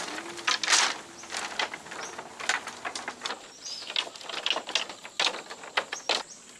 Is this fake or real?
real